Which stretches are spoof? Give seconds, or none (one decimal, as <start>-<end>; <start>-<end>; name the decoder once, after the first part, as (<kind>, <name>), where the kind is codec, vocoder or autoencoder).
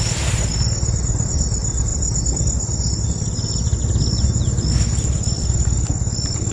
none